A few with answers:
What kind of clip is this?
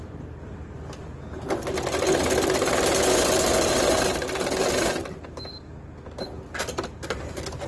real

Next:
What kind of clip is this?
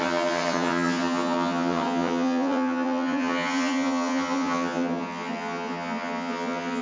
fake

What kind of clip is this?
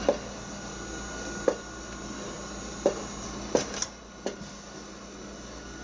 real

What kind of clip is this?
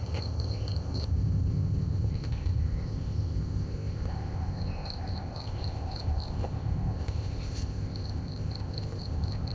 fake